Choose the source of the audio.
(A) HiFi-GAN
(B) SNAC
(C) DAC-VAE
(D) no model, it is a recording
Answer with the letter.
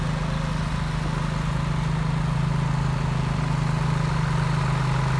D